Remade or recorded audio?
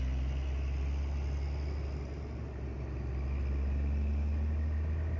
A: recorded